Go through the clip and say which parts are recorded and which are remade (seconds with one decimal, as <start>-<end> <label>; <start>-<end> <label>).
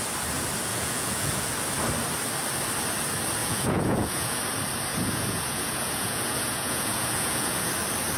0.0-0.7 recorded; 0.7-1.5 remade; 1.5-3.4 recorded; 3.4-4.4 remade; 4.4-4.9 recorded; 4.9-7.7 remade; 7.7-8.2 recorded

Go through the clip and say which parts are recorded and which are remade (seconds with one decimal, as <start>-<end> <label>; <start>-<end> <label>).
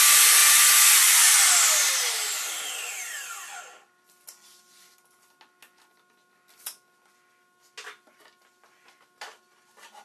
0.0-10.0 recorded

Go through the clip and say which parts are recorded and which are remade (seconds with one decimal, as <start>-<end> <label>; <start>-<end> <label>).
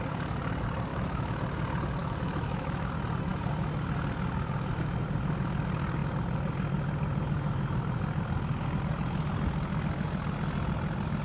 0.0-0.9 recorded; 0.9-1.4 remade; 1.4-2.0 recorded; 2.0-2.9 remade; 2.9-11.2 recorded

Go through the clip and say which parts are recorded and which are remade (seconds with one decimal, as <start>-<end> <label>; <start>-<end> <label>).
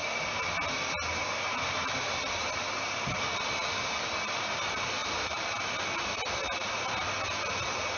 0.0-5.0 recorded; 5.0-5.7 remade; 5.7-8.0 recorded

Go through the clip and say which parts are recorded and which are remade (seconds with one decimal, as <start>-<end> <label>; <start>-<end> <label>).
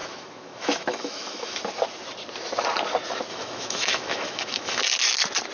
0.0-1.6 remade; 1.6-3.3 recorded; 3.3-4.8 remade; 4.8-5.5 recorded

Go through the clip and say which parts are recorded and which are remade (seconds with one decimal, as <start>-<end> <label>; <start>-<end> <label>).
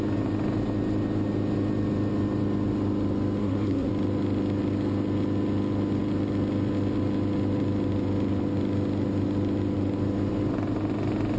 0.0-3.4 recorded; 3.4-3.9 remade; 3.9-11.4 recorded